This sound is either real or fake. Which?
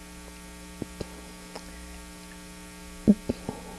real